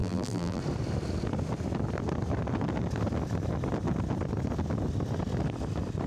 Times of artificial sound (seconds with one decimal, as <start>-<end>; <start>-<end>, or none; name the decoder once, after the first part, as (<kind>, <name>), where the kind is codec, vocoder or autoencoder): 0.0-0.6 (vocoder, BigVGAN v2)